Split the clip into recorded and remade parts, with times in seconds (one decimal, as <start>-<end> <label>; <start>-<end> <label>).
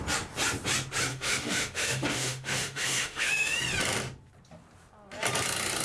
0.0-1.1 recorded; 1.1-3.6 remade; 3.6-5.8 recorded